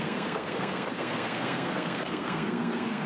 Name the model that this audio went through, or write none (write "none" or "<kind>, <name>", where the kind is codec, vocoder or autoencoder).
codec, SNAC